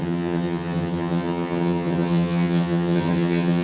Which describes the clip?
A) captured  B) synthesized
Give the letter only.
B